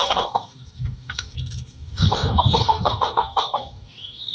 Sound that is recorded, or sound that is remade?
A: remade